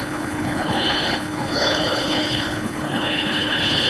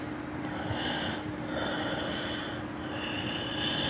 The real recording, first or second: second